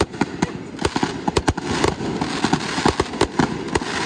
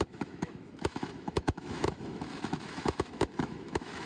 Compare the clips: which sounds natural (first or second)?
first